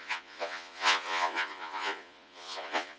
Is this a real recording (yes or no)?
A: no